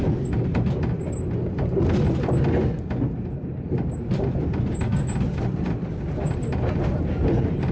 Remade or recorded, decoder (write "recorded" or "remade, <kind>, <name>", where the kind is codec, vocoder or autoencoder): recorded